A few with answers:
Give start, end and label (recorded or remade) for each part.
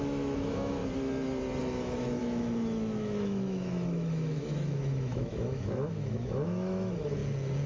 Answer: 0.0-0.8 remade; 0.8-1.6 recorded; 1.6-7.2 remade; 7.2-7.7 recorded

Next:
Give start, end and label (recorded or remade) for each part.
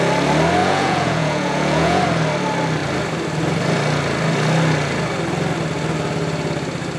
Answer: 0.0-0.6 recorded; 0.6-2.0 remade; 2.0-7.0 recorded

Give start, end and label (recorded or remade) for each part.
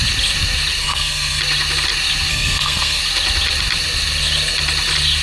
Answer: 0.0-0.8 recorded; 0.8-1.4 remade; 1.4-2.3 recorded; 2.3-3.0 remade; 3.0-5.2 recorded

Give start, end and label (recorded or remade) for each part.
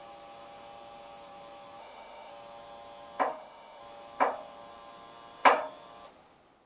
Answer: 0.0-1.8 recorded; 1.8-2.3 remade; 2.3-3.3 recorded; 3.3-3.8 remade; 3.8-6.7 recorded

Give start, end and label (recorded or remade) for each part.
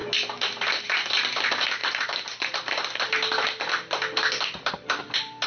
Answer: 0.0-5.5 recorded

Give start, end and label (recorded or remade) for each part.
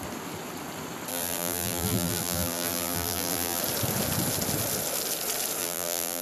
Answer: 0.0-1.1 recorded; 1.1-3.6 remade; 3.6-5.6 recorded; 5.6-6.2 remade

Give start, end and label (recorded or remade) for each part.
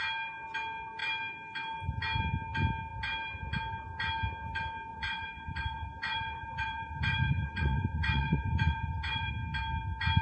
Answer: 0.0-4.9 recorded; 4.9-9.3 remade; 9.3-10.2 recorded